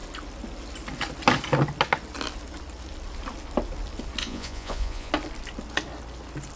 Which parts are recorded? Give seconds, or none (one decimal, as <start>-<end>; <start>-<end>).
0.0-4.2; 5.1-6.6